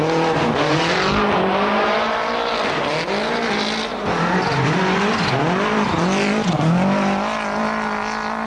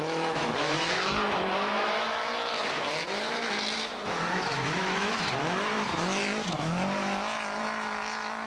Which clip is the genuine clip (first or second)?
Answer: first